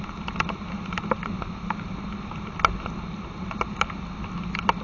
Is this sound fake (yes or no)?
no